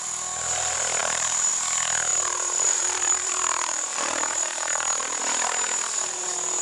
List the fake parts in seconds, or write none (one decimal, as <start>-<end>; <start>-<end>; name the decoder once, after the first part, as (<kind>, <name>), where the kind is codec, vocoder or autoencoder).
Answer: 1.0-1.5 (vocoder, BigVGAN v2); 2.1-5.2

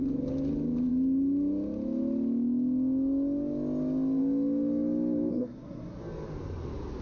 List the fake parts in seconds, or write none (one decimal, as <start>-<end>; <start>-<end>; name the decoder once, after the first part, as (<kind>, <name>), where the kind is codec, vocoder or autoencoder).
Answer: 5.3-6.0 (codec, SNAC)

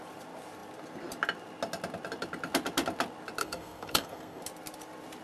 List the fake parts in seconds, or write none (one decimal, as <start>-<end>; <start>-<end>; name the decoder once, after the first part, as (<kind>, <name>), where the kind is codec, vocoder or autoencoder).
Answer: 3.4-4.4 (codec, SNAC)